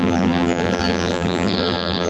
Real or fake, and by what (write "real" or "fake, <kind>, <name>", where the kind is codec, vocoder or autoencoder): fake, vocoder, BigVGAN v2